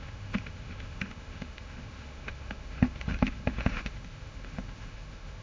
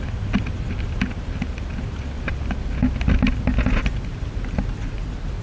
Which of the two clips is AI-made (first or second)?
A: first